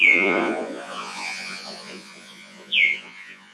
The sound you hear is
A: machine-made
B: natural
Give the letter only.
A